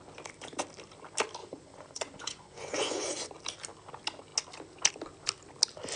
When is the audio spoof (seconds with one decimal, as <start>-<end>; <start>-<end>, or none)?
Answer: 1.4-3.3